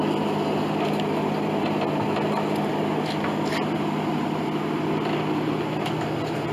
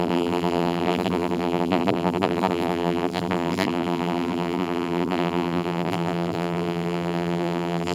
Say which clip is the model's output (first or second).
second